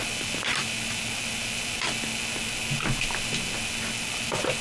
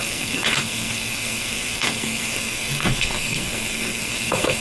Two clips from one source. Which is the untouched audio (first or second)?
first